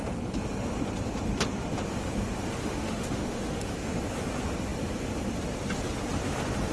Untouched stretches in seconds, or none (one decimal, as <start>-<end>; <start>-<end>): 0.0-2.6; 4.0-6.7